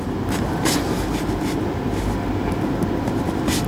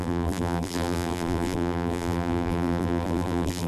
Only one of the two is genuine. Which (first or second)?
first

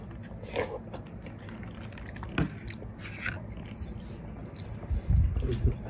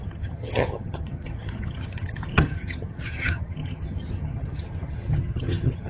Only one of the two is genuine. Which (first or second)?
first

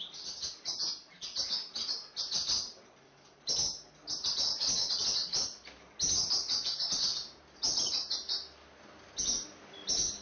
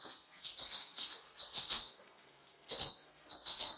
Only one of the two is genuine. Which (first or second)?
first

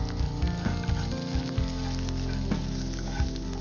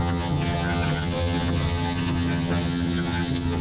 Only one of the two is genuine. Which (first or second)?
first